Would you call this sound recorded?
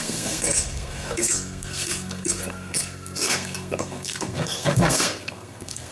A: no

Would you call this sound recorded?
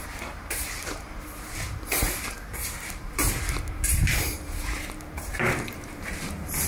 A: no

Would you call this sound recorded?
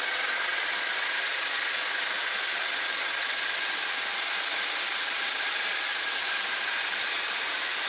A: yes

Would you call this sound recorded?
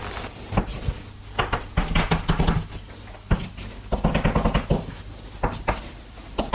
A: yes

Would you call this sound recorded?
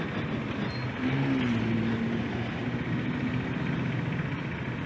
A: yes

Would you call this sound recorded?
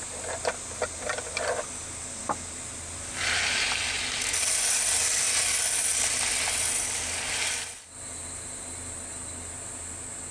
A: yes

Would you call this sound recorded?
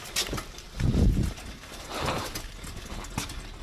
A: yes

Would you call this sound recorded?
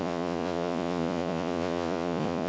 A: no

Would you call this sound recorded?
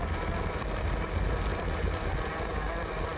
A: yes